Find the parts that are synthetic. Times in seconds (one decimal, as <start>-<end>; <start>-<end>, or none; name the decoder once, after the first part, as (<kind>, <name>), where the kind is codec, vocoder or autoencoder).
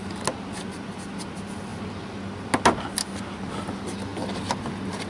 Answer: 0.6-1.2 (vocoder, BigVGAN v2)